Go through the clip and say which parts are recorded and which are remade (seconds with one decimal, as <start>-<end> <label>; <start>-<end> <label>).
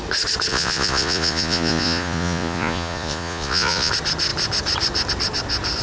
0.0-0.5 recorded; 0.5-3.9 remade; 3.9-5.8 recorded